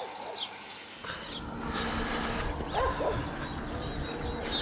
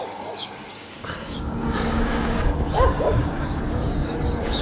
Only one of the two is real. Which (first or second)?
first